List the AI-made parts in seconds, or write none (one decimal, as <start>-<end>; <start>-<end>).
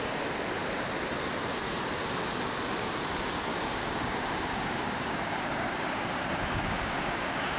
3.5-7.6